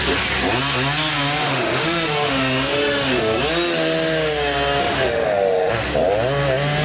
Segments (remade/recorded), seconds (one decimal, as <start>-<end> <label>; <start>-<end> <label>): 0.0-1.4 recorded; 1.4-3.4 remade; 3.4-4.8 recorded; 4.8-5.7 remade; 5.7-6.8 recorded